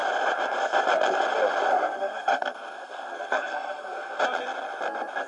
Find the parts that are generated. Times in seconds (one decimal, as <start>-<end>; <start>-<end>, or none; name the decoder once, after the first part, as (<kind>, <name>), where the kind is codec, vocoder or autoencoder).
1.7-4.2 (codec, SNAC)